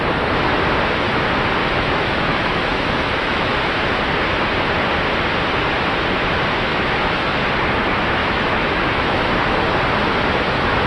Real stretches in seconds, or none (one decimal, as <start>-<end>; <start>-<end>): 0.0-1.6; 3.7-6.7; 7.4-8.2; 9.3-10.9